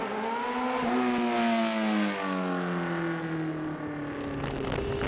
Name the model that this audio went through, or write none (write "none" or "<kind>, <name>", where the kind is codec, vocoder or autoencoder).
none